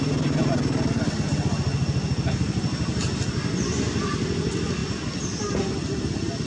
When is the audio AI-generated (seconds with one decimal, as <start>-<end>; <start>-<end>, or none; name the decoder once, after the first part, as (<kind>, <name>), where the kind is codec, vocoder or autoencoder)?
none